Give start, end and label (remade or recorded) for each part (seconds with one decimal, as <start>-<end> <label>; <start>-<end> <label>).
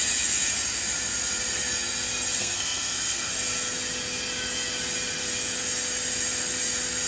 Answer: 0.0-2.4 recorded; 2.4-3.3 remade; 3.3-7.1 recorded